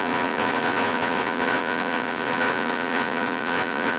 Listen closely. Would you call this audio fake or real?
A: fake